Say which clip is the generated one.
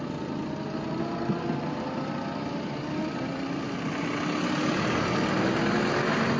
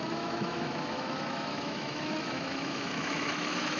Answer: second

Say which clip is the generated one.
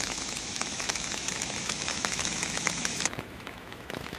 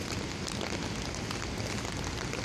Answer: first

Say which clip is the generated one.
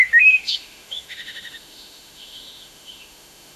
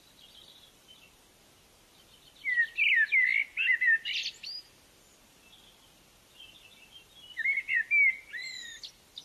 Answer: first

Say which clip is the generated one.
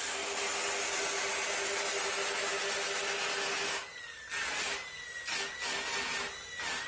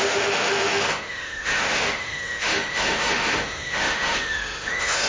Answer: second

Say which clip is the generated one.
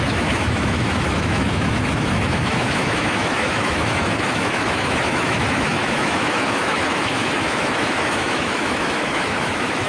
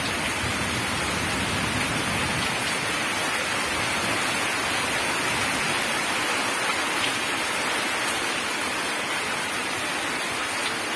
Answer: first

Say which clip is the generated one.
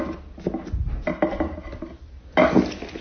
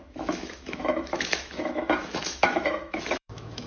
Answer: second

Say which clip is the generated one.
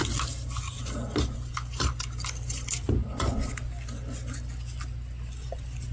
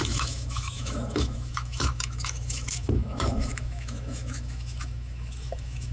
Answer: second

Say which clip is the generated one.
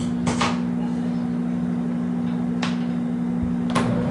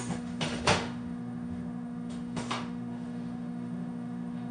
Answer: second